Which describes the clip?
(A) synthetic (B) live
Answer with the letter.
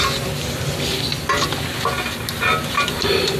B